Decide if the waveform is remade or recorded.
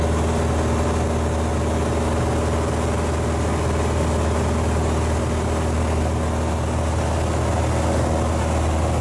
recorded